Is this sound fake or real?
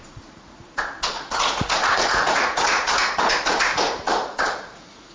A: fake